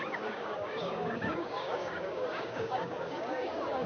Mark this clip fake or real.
fake